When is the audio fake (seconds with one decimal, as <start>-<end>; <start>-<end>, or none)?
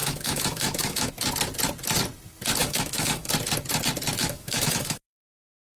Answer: 0.0-1.1; 2.6-3.3; 4.2-5.8